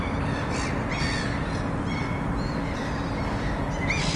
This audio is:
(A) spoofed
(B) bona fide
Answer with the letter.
B